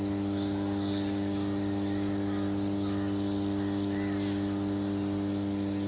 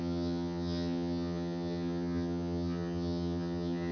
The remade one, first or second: second